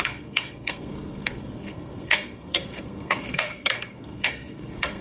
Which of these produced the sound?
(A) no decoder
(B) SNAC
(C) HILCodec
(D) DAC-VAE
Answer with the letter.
B